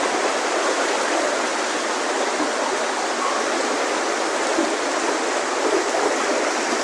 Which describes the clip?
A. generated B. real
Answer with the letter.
B